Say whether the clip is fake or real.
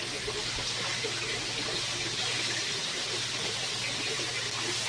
real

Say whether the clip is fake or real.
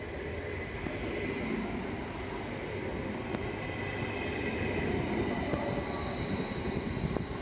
real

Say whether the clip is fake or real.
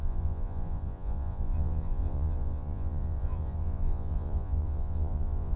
fake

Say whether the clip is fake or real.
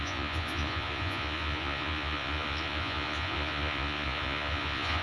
fake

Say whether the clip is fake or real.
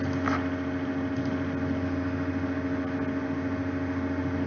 real